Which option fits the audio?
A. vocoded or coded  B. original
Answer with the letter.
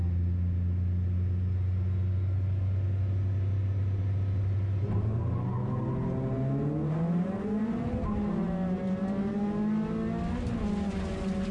B